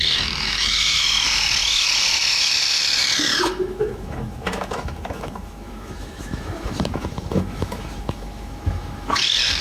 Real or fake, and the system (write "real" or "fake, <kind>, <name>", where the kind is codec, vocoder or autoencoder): fake, autoencoder, DAC-VAE